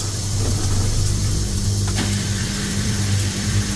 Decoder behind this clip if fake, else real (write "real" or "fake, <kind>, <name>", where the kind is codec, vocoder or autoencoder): fake, vocoder, BigVGAN v2